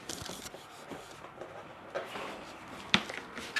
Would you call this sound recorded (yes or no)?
no